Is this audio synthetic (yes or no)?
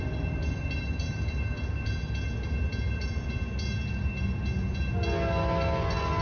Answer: no